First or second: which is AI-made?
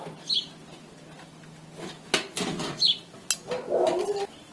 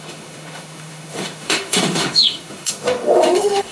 second